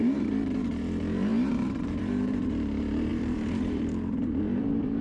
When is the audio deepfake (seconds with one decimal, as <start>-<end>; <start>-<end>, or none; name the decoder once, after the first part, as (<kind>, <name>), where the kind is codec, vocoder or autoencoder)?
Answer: 0.0-5.0 (vocoder, BigVGAN v2)